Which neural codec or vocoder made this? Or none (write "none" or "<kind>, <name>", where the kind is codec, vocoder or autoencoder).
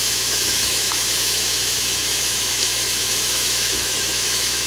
autoencoder, DAC-VAE